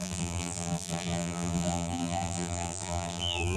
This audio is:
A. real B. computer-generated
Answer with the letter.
B